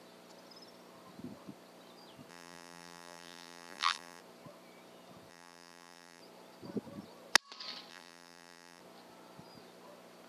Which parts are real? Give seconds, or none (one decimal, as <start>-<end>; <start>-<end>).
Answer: 0.0-2.3; 4.2-5.3; 6.2-7.9; 8.8-10.3